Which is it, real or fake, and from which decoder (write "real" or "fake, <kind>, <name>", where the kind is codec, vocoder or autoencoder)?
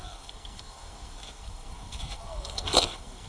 fake, codec, SNAC